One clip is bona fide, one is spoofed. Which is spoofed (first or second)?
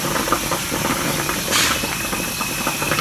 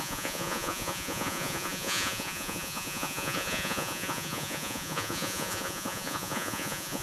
second